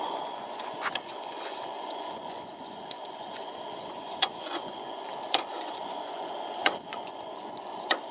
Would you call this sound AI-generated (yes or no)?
yes